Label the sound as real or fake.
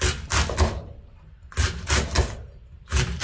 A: real